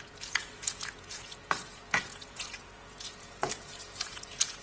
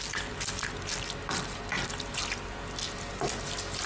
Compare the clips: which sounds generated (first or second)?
first